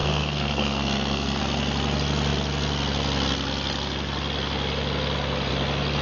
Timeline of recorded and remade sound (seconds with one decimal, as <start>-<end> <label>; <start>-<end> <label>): 0.0-1.4 remade; 1.4-6.0 recorded

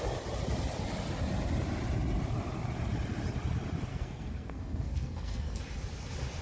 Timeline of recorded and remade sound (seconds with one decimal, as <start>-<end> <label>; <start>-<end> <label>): 0.0-3.9 recorded; 3.9-5.6 remade; 5.6-6.4 recorded

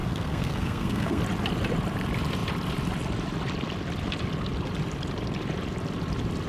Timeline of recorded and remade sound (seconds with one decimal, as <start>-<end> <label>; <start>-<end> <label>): 0.0-1.2 remade; 1.2-6.5 recorded

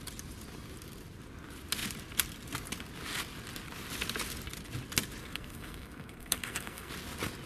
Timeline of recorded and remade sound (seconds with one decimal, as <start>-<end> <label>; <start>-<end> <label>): 0.0-5.2 recorded; 5.2-6.9 remade; 6.9-7.5 recorded

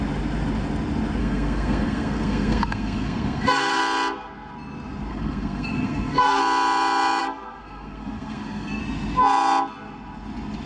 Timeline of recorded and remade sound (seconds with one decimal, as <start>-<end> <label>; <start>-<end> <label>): 0.0-1.2 recorded; 1.2-3.8 remade; 3.8-5.1 recorded; 5.1-6.4 remade; 6.4-7.2 recorded; 7.2-8.8 remade; 8.8-10.7 recorded

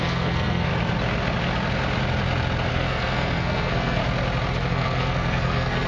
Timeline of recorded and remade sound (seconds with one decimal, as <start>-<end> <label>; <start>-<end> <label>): 0.0-0.7 remade; 0.7-2.7 recorded; 2.7-4.0 remade; 4.0-4.7 recorded; 4.7-5.9 remade

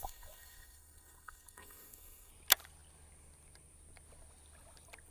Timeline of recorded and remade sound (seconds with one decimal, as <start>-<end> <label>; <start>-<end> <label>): 0.0-2.3 remade; 2.3-5.1 recorded

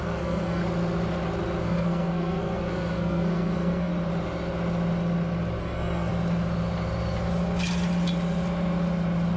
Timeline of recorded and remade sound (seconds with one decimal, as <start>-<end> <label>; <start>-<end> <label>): 0.0-0.6 remade; 0.6-1.6 recorded; 1.6-3.9 remade; 3.9-5.6 recorded; 5.6-6.1 remade; 6.1-9.4 recorded